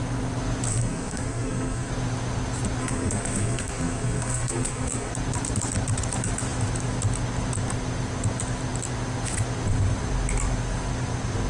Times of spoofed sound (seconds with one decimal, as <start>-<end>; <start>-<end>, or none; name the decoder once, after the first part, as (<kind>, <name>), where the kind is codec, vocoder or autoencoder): 0.7-1.9 (codec, SNAC); 2.8-5.1